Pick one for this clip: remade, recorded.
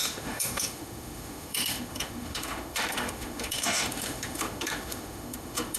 remade